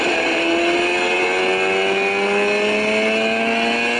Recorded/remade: recorded